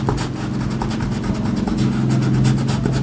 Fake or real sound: real